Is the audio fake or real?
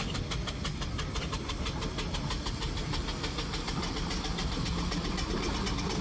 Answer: real